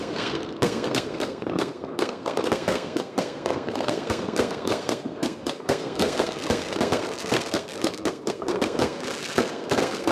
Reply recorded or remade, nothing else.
remade